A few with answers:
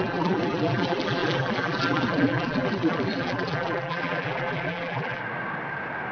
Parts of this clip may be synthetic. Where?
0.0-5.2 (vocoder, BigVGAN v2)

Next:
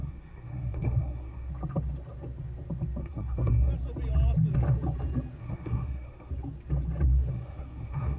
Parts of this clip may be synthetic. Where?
0.0-1.5 (codec, SNAC); 3.0-3.7; 5.4-6.3; 7.3-8.2

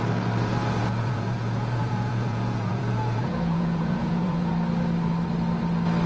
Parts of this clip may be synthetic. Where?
0.8-4.5 (vocoder, Vocos)

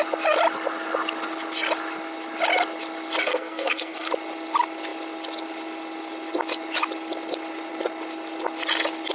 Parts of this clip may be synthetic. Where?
3.2-4.1 (codec, SNAC)

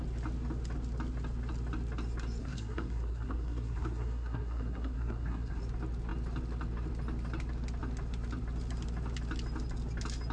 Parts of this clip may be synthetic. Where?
2.4-5.6 (codec, SNAC)